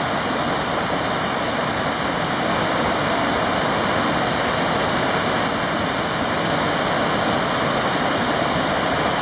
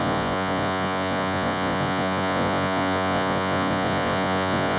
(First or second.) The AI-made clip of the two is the second